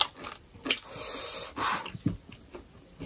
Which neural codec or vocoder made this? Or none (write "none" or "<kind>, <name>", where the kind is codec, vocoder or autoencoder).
none